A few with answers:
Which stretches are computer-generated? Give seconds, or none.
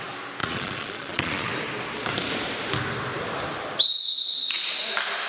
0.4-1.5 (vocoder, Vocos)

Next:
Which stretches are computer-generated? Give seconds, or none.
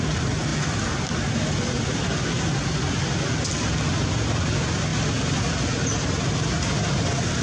none